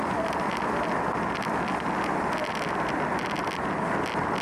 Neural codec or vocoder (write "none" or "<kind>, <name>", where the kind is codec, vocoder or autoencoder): none